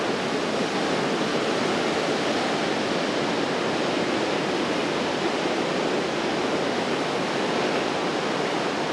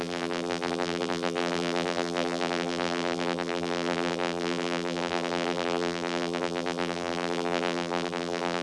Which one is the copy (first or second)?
second